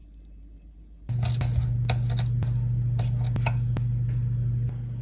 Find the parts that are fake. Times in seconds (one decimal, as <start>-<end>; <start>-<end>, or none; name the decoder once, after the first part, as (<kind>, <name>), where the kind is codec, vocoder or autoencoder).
none